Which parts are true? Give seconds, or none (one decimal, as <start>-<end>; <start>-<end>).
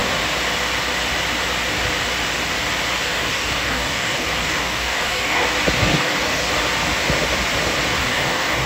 0.0-3.0; 5.4-5.9; 6.5-8.0